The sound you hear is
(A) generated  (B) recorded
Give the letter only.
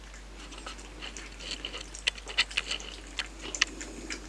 B